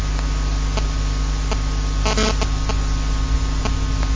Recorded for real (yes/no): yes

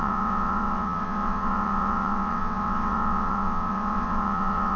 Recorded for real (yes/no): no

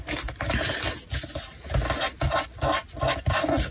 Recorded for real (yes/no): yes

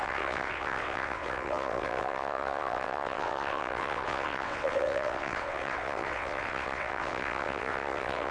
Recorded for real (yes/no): no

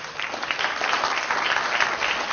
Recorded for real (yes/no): yes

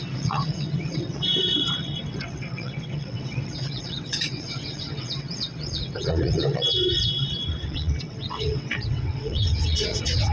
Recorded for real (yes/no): no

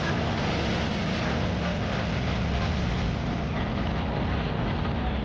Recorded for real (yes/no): yes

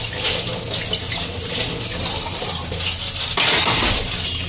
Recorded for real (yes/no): yes